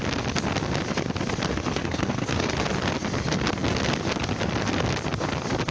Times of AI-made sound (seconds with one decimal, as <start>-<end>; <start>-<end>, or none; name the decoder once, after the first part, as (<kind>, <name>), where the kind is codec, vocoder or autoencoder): 1.5-2.5 (codec, SNAC)